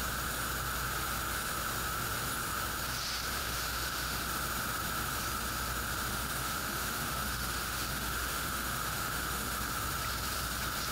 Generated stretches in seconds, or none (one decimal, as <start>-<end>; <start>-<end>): 3.4-4.2; 6.1-9.8